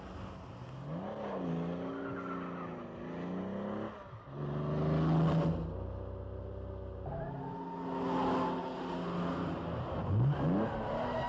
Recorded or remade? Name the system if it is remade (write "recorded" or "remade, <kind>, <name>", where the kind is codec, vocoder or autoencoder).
recorded